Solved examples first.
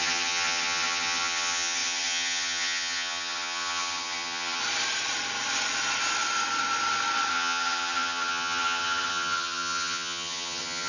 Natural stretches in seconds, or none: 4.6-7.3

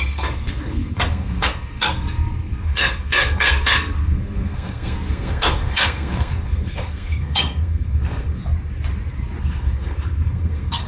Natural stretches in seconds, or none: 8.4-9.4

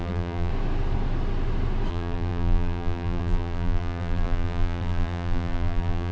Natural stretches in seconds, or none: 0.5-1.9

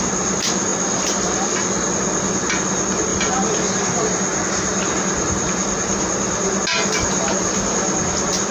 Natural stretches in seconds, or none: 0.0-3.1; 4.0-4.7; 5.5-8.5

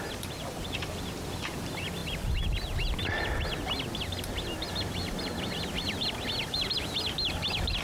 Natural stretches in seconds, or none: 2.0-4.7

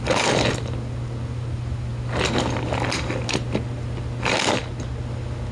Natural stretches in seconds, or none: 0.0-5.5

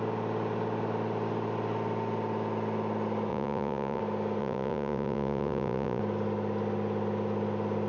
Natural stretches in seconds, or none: 0.0-3.3; 4.0-4.4; 6.0-7.9